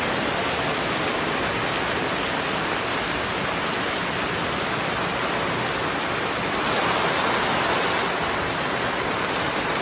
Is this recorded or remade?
recorded